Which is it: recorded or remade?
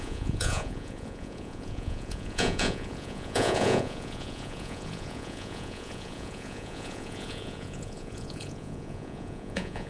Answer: remade